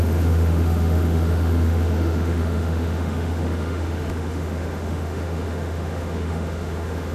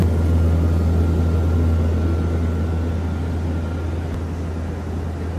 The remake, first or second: first